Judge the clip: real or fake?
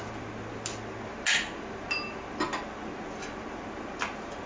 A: real